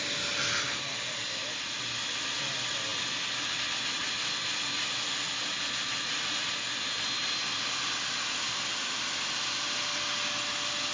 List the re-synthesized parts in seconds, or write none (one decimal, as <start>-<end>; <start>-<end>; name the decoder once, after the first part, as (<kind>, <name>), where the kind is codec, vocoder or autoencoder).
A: none